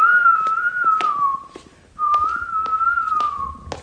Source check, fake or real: real